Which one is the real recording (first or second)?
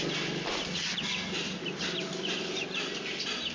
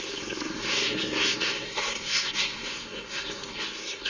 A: first